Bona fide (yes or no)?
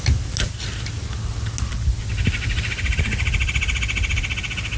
yes